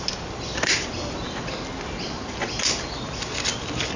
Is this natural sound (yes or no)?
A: yes